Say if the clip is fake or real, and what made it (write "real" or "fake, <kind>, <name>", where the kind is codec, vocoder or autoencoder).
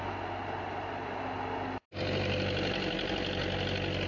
real